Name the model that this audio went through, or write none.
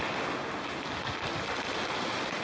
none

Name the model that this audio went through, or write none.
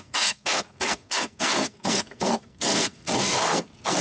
codec, SNAC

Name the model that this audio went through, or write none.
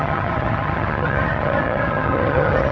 vocoder, HiFi-GAN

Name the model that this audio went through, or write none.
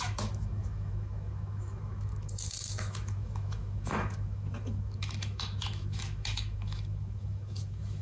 autoencoder, DAC-VAE